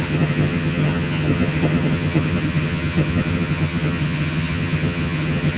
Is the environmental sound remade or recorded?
remade